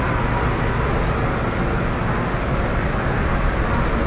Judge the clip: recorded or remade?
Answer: recorded